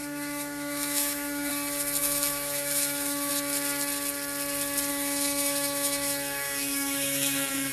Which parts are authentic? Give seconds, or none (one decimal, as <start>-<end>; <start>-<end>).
1.5-2.0; 3.3-4.9